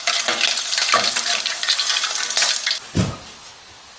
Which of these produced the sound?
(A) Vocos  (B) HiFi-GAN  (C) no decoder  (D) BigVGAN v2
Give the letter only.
C